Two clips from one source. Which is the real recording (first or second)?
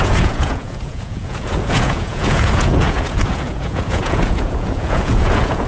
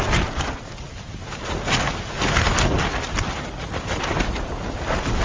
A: second